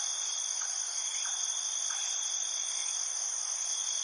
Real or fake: real